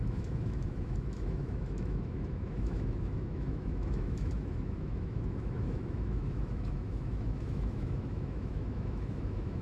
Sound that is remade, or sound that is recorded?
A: remade